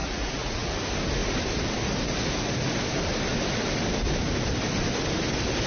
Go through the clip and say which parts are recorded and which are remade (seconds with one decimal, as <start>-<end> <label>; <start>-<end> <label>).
0.0-0.7 remade; 0.7-5.7 recorded